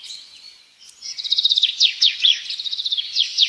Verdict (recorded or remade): remade